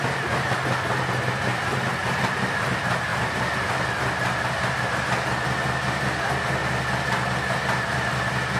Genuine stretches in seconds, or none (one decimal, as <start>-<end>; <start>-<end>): 0.0-1.5; 2.2-3.1; 3.9-8.6